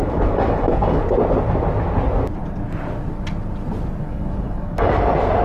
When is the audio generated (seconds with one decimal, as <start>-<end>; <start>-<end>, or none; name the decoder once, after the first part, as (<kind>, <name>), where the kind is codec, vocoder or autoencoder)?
0.0-1.0 (codec, DAC); 4.0-4.9